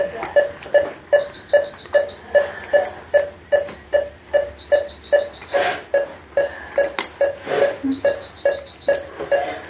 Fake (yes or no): no